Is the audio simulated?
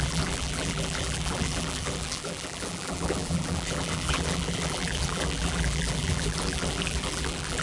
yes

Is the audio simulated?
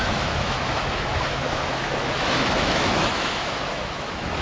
yes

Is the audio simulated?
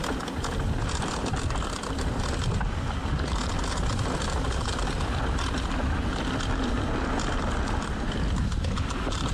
no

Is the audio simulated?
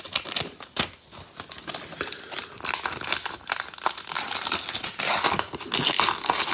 no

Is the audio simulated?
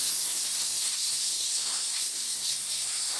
yes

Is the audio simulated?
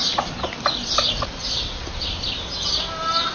no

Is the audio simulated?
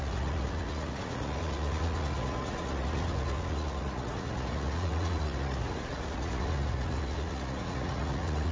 yes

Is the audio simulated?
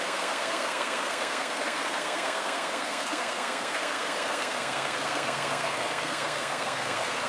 yes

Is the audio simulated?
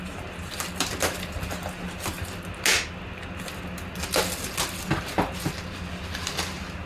no